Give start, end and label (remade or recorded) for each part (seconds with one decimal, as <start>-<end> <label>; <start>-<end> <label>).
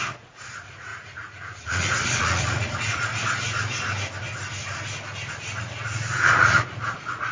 0.0-3.1 remade; 3.1-5.6 recorded; 5.6-7.3 remade